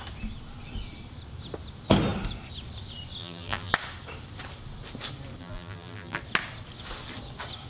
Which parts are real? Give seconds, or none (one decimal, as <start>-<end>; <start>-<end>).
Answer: 0.0-3.2; 3.7-5.4; 6.2-7.7

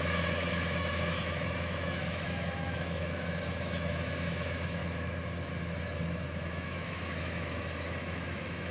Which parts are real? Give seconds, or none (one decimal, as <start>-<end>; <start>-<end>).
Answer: 4.8-5.8

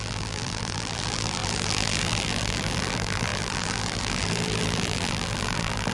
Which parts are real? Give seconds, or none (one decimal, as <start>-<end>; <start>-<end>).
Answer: none

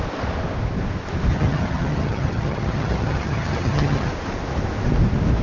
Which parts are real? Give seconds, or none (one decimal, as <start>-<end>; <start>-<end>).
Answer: 0.0-1.3; 4.1-5.4

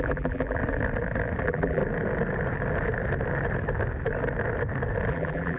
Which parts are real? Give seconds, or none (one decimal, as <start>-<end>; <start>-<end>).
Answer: 0.6-1.4; 1.8-5.1

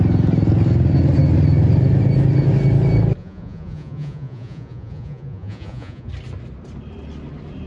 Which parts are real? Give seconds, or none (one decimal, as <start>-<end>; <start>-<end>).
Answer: 0.0-3.2; 6.1-7.7

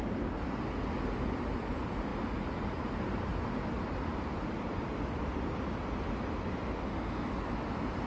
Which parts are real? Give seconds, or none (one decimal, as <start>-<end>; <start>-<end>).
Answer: 0.0-8.1